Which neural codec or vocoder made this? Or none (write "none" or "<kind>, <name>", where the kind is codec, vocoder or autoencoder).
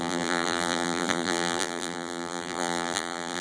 vocoder, BigVGAN v2